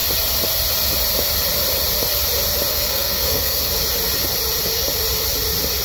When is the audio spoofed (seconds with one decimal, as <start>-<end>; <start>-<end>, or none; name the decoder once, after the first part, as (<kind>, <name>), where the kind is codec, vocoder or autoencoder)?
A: 2.7-3.7 (codec, SNAC)